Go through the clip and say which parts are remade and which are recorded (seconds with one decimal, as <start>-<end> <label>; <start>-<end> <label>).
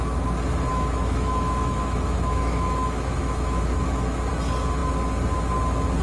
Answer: 0.0-0.7 recorded; 0.7-4.3 remade; 4.3-6.0 recorded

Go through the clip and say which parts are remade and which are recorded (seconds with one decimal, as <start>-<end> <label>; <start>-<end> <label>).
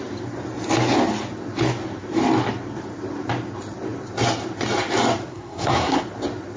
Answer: 0.0-5.3 recorded; 5.3-6.0 remade; 6.0-6.6 recorded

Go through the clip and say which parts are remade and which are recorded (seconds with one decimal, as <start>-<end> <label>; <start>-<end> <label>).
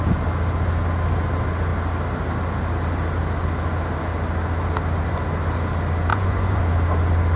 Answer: 0.0-6.1 recorded; 6.1-6.6 remade; 6.6-7.4 recorded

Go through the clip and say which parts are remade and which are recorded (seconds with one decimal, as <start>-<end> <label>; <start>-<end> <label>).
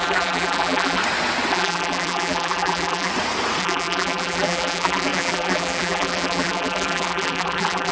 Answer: 0.0-1.0 remade; 1.0-1.5 recorded; 1.5-3.1 remade; 3.1-3.6 recorded; 3.6-7.9 remade